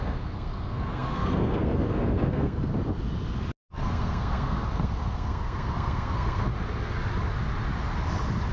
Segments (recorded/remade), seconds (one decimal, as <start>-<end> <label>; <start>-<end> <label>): 0.0-2.7 remade; 2.7-3.7 recorded; 3.7-6.5 remade; 6.5-8.5 recorded